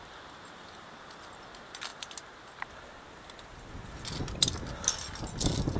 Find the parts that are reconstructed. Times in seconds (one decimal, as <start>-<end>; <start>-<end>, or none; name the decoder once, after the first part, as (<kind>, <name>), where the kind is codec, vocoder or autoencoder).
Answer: none